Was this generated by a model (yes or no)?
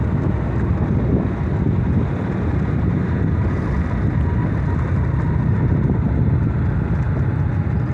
no